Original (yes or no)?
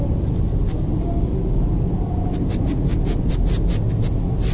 yes